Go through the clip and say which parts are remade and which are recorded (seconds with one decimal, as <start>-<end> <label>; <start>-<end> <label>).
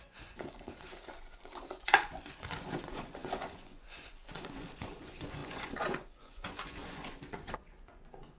0.0-8.4 remade